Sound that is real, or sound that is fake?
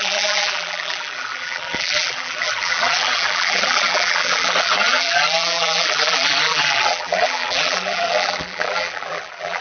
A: fake